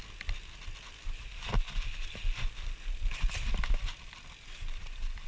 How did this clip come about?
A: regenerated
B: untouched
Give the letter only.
B